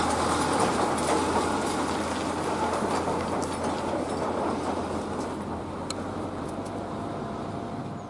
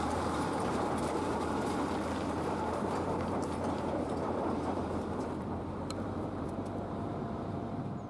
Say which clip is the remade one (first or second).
second